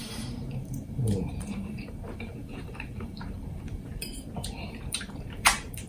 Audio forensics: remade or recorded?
remade